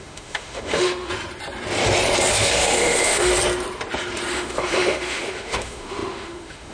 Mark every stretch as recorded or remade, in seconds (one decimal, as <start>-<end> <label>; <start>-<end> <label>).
0.0-1.1 remade; 1.1-2.3 recorded; 2.3-3.3 remade; 3.3-4.3 recorded; 4.3-6.7 remade